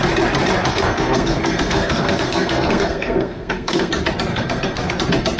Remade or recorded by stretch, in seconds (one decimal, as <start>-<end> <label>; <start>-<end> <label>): 0.0-0.7 recorded; 0.7-3.9 remade; 3.9-4.3 recorded; 4.3-4.9 remade; 4.9-5.4 recorded